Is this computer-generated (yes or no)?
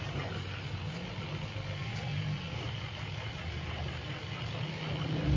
no